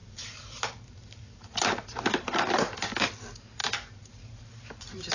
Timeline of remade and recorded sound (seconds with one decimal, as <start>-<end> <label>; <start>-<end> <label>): 0.0-3.1 remade; 3.1-3.6 recorded; 3.6-5.1 remade